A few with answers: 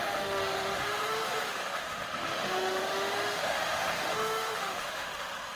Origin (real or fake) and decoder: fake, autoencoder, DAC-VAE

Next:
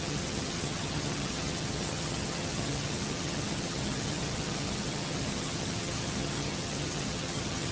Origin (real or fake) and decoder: fake, vocoder, HiFi-GAN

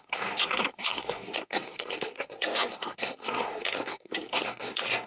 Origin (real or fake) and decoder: fake, codec, SNAC